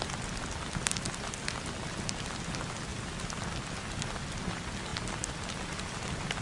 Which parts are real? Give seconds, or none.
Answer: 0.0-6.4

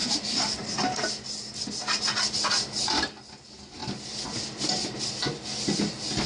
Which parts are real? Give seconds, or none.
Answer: 0.0-3.8; 5.1-6.3

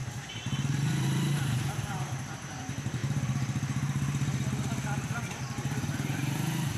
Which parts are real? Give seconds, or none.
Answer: none